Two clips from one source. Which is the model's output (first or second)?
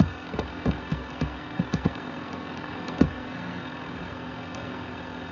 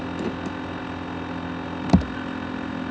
first